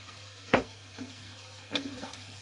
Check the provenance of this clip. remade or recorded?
remade